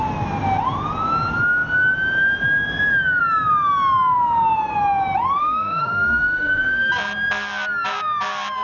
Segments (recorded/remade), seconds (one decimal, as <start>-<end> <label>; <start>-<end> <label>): 0.0-5.4 recorded; 5.4-6.9 remade; 6.9-8.6 recorded